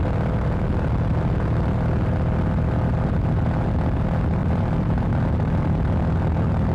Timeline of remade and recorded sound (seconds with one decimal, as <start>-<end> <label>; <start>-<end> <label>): 0.0-4.4 recorded; 4.4-5.7 remade; 5.7-6.7 recorded